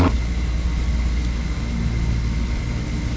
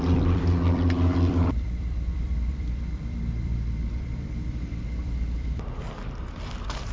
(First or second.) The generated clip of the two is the second